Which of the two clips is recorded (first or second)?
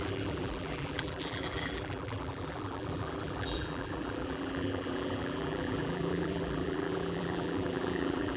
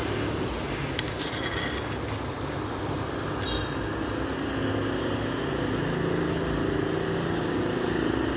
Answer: second